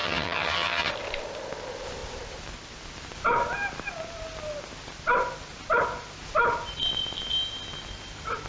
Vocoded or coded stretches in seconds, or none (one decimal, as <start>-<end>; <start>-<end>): 0.0-0.9